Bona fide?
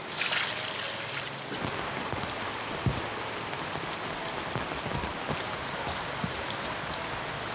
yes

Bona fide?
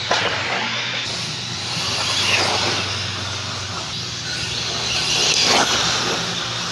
yes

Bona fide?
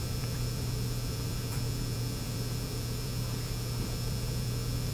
no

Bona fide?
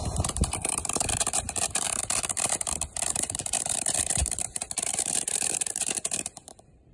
no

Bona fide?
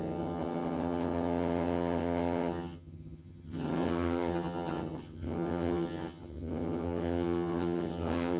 no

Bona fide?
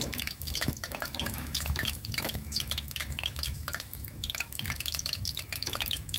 no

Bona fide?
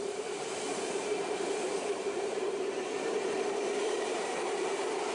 no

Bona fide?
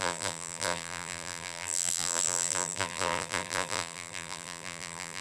no